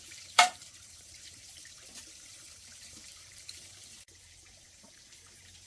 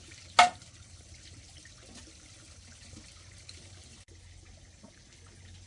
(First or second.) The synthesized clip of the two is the first